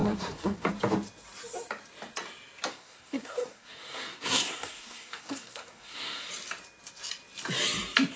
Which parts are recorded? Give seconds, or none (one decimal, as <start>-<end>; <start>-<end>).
0.7-2.7; 6.3-8.2